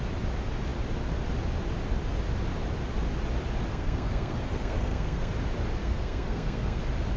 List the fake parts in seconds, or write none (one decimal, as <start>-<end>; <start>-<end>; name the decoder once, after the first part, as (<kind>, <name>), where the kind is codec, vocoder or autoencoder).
3.7-5.3 (codec, SNAC); 5.8-6.8